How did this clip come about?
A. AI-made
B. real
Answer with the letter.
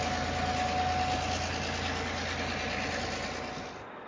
B